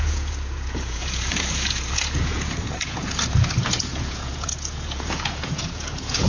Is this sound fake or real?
fake